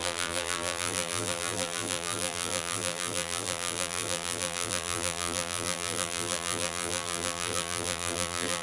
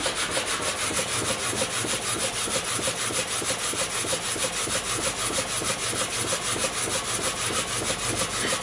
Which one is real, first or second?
second